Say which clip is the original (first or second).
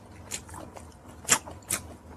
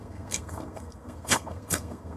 first